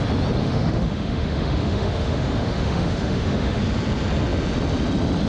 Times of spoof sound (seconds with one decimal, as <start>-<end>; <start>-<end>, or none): 0.4-3.6